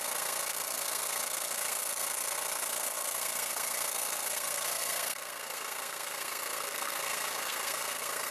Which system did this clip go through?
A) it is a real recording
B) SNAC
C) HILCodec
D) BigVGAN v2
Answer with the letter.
B